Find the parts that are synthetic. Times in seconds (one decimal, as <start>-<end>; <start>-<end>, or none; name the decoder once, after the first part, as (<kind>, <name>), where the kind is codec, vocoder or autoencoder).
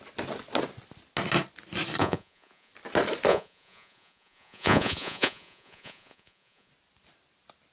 2.0-2.7 (vocoder, Vocos); 3.3-6.7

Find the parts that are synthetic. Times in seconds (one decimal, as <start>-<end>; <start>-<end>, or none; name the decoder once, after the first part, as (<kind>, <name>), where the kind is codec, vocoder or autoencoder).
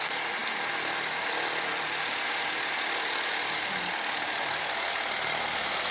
none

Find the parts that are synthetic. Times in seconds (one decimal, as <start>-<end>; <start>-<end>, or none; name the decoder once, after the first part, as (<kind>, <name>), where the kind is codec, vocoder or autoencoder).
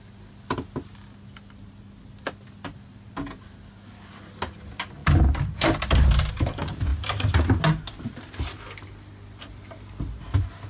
none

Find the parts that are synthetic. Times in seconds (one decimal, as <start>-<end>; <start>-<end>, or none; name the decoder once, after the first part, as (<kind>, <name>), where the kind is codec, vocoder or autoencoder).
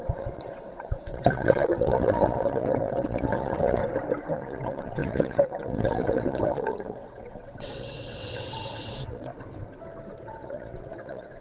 0.0-3.8 (vocoder, WaveNeXt); 4.3-9.3; 10.3-11.4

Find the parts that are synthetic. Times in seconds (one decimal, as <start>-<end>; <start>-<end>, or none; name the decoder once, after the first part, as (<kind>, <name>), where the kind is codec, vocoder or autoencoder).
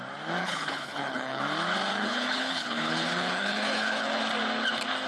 0.4-1.4 (codec, HILCodec); 1.9-4.2